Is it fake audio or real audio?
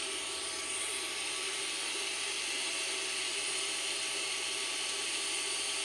fake